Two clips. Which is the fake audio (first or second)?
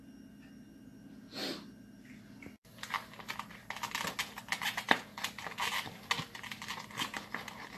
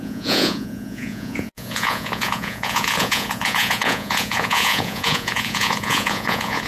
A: second